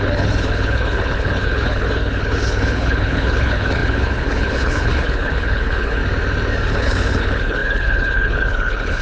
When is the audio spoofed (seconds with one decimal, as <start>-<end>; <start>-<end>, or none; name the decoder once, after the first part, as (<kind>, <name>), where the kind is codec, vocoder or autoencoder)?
0.0-6.0 (codec, HILCodec); 6.7-9.0